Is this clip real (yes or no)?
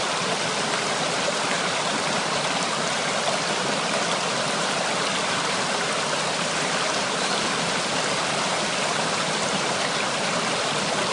yes